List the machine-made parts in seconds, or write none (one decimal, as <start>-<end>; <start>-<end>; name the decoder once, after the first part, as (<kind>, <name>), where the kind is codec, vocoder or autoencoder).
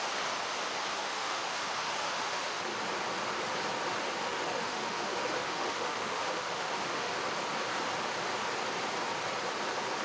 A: 0.9-2.6 (autoencoder, DAC-VAE); 4.2-7.2